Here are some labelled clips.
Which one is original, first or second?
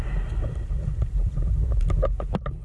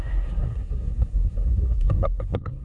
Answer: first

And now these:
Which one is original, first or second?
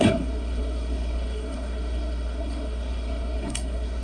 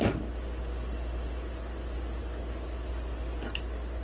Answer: second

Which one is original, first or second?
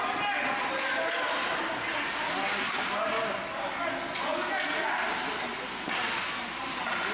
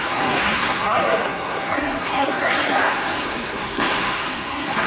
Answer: first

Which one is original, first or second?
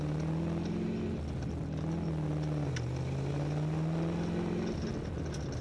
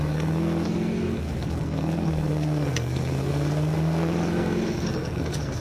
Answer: first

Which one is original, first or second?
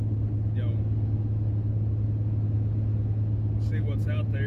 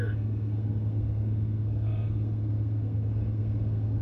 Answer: first